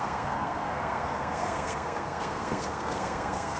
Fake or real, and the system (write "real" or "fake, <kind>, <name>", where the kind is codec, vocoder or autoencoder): fake, codec, SNAC